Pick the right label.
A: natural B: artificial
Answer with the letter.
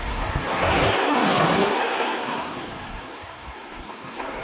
B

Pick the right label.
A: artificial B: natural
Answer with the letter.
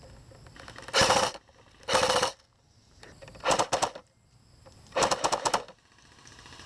B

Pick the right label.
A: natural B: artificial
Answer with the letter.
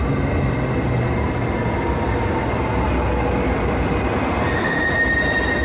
A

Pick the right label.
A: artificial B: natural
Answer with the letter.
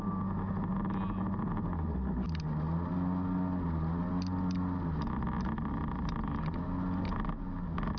B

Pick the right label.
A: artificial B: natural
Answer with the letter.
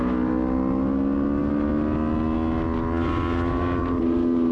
B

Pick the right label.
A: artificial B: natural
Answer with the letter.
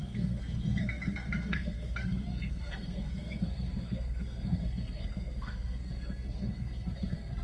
A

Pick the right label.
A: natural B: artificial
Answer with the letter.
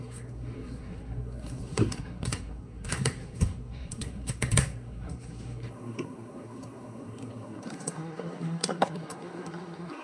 B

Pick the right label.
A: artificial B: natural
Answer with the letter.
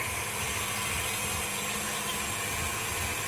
B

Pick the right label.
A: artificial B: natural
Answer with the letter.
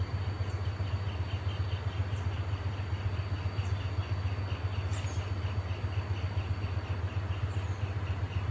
B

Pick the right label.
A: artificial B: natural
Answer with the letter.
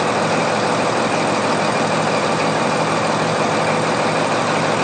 B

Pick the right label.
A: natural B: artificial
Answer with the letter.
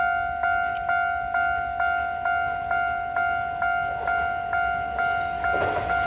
A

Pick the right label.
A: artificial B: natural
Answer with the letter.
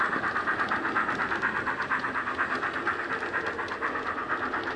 B